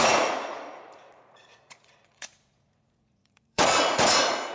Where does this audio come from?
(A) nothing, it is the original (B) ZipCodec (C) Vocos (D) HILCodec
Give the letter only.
C